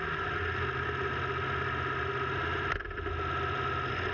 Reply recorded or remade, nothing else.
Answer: recorded